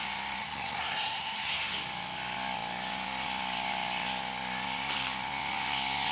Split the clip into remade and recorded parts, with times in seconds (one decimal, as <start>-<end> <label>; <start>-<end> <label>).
0.0-0.4 recorded; 0.4-1.7 remade; 1.7-6.1 recorded

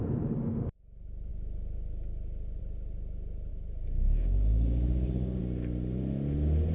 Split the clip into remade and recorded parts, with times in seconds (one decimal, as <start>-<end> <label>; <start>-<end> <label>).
0.0-3.5 recorded; 3.5-5.4 remade; 5.4-6.7 recorded

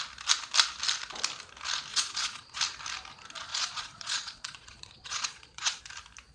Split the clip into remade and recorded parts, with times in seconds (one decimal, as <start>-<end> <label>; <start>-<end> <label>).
0.0-1.9 recorded; 1.9-2.6 remade; 2.6-3.5 recorded; 3.5-5.8 remade; 5.8-6.3 recorded

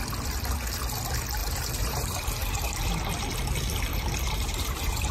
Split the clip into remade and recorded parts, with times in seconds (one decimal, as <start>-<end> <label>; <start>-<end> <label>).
0.0-1.4 recorded; 1.4-3.3 remade; 3.3-3.9 recorded; 3.9-5.1 remade